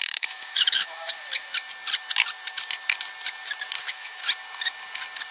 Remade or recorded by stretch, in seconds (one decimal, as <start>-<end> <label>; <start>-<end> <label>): 0.0-1.5 remade; 1.5-3.8 recorded; 3.8-4.2 remade; 4.2-5.3 recorded